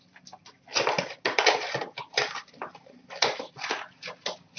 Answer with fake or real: real